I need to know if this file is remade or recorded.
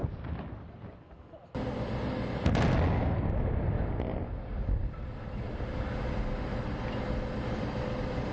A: recorded